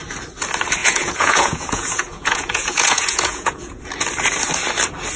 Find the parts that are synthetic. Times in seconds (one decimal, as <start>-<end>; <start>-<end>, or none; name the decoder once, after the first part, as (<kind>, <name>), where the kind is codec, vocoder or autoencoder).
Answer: 0.8-3.8 (vocoder, Vocos)